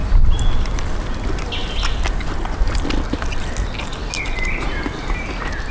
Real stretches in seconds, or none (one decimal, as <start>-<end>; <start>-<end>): 0.0-5.7